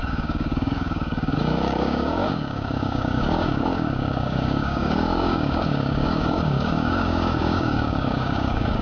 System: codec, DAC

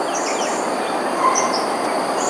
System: none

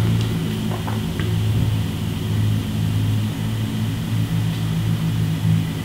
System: none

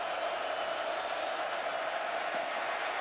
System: none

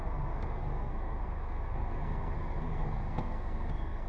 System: codec, SNAC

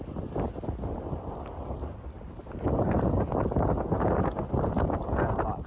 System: none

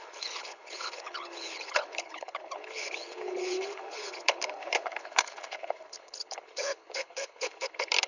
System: codec, HILCodec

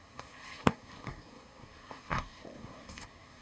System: codec, SNAC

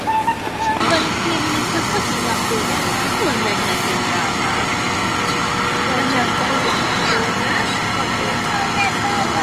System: none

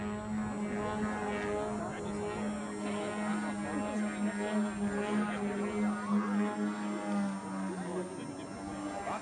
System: none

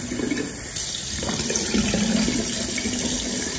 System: none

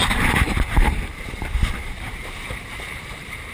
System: vocoder, BigVGAN v2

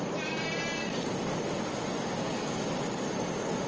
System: none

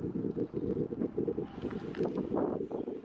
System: none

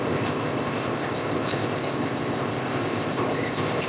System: codec, ZipCodec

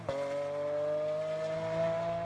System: none